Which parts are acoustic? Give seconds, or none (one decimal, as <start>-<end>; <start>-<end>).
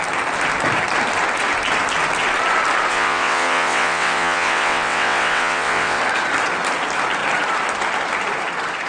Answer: 0.0-2.9; 6.0-8.9